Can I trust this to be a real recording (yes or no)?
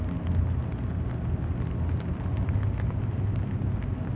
yes